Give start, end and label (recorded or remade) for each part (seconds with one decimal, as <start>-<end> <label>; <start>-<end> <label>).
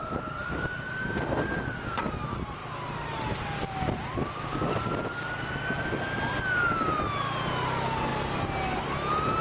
0.0-9.4 recorded